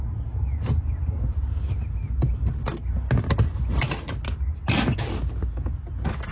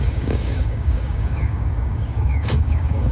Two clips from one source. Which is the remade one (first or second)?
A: second